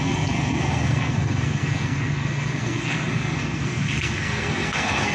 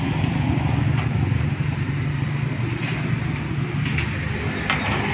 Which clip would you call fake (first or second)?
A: first